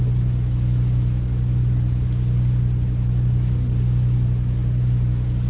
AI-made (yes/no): no